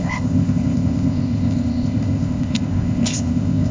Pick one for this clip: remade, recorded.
remade